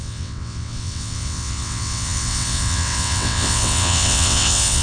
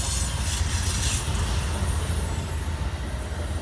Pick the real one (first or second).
second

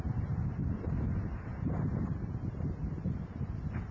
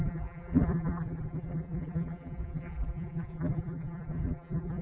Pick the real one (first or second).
first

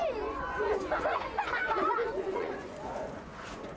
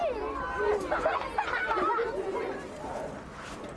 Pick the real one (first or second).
second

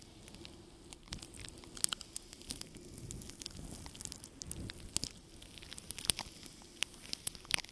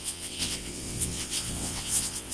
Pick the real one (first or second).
first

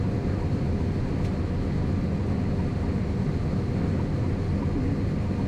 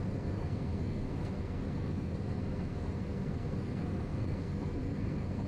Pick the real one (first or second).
first